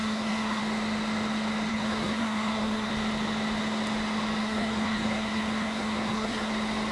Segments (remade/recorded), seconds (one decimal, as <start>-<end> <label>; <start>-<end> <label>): 0.0-0.6 remade; 0.6-1.7 recorded; 1.7-2.9 remade; 2.9-4.4 recorded; 4.4-6.5 remade; 6.5-6.9 recorded